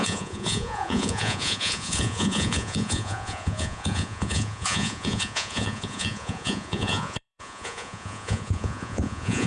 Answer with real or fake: fake